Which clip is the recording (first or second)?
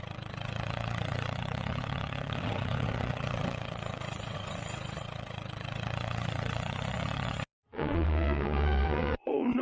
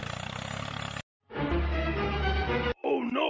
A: second